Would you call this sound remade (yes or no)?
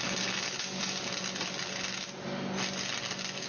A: no